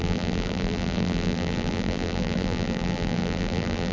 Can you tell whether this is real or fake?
fake